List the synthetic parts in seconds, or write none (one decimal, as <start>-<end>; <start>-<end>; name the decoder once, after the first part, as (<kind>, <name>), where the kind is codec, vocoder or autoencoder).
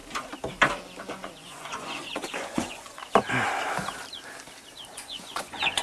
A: 1.0-3.0 (vocoder, Vocos); 4.9-5.8